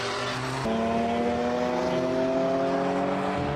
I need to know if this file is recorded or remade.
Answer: recorded